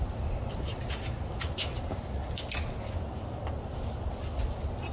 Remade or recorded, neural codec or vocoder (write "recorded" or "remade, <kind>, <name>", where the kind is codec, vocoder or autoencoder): recorded